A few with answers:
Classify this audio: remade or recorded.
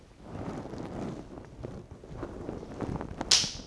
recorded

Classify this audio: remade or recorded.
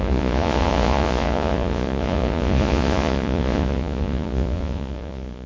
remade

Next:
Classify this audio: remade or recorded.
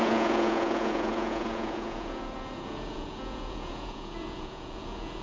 remade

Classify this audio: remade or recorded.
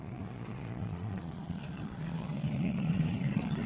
remade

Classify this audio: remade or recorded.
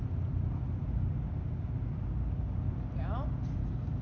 recorded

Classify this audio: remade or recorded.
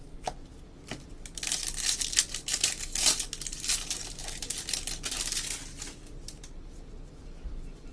recorded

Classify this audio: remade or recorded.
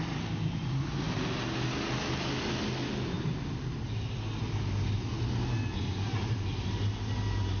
recorded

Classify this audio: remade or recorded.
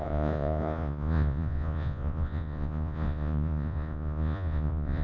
remade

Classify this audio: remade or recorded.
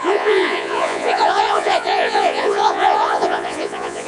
remade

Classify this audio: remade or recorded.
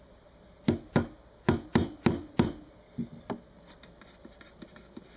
recorded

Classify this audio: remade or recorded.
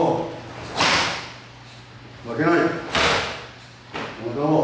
recorded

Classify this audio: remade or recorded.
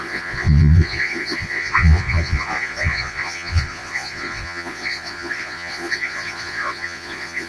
remade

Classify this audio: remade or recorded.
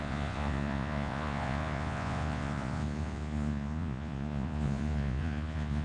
remade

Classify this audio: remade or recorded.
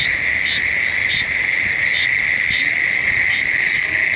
recorded